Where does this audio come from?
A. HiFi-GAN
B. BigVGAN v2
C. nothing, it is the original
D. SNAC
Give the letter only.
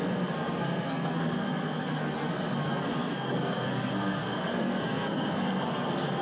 D